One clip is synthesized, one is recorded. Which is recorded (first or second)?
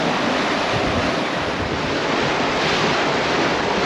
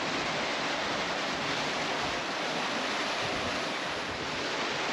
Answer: second